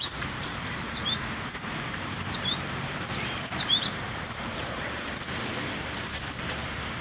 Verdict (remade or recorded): remade